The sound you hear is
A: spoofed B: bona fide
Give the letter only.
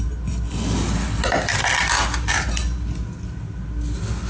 B